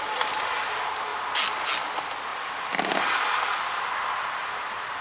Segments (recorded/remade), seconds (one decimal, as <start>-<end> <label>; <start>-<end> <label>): 0.0-5.0 recorded